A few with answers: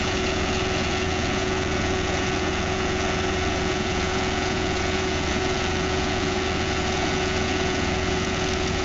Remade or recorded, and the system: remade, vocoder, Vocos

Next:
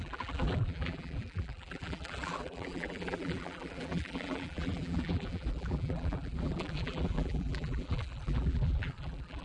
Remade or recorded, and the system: remade, vocoder, BigVGAN v2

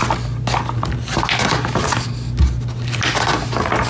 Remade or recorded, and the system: recorded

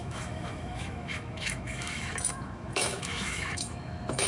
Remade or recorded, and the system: remade, autoencoder, DAC-VAE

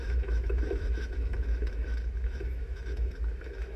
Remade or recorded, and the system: remade, autoencoder, DAC-VAE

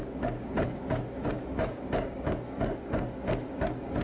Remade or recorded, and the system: remade, codec, DAC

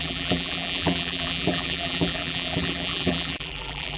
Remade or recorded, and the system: remade, vocoder, BigVGAN v2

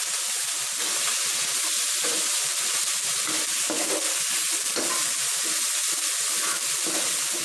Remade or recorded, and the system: recorded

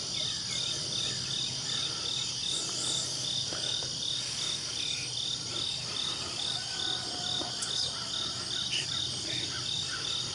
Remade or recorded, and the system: recorded